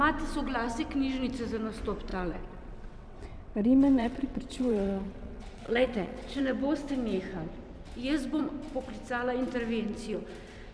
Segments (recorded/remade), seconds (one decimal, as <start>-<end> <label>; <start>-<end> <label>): 0.0-2.1 recorded; 2.1-6.4 remade; 6.4-10.7 recorded